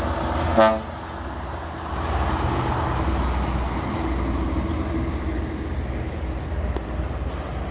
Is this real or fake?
real